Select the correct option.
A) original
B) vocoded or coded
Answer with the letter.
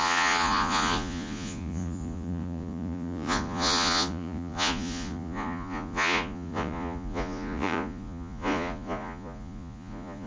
B